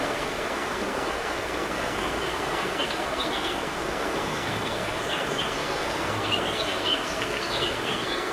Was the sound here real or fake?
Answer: fake